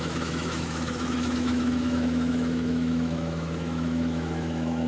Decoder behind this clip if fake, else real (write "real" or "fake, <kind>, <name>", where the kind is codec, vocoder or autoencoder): fake, autoencoder, DAC-VAE